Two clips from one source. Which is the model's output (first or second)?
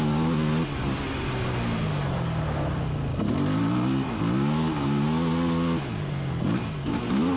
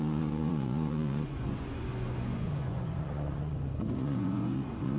second